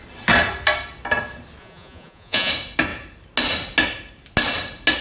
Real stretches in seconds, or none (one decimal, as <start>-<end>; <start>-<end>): 0.0-1.6; 2.5-5.0